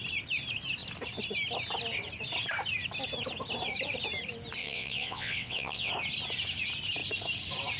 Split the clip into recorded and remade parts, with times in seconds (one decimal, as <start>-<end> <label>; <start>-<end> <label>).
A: 0.0-4.6 recorded; 4.6-5.9 remade; 5.9-7.8 recorded